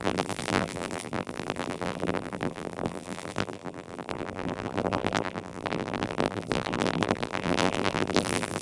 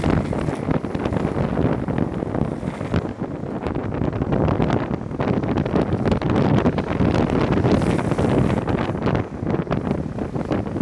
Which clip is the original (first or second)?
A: second